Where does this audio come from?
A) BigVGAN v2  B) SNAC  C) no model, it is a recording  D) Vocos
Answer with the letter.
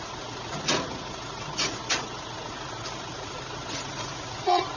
D